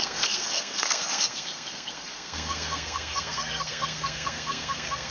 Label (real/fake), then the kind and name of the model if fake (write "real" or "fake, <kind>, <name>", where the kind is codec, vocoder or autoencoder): fake, codec, SNAC